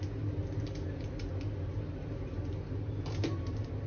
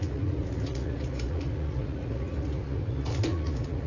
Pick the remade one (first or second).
second